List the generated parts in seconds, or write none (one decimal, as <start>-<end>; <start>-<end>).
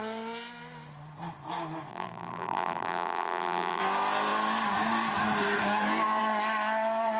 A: 1.9-3.8